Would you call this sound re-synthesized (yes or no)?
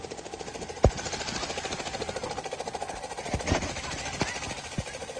no